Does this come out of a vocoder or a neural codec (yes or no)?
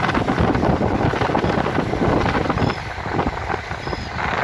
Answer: no